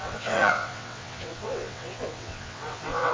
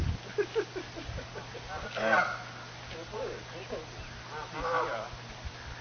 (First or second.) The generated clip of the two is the first